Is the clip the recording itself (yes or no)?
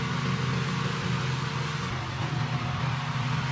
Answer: yes